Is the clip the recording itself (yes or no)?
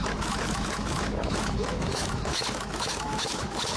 no